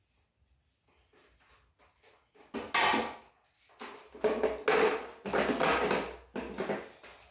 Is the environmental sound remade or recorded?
recorded